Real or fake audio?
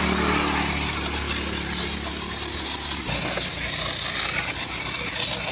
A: real